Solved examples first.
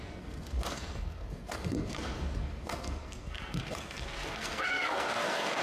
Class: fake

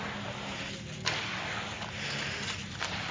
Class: real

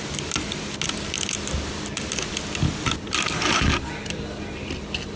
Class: real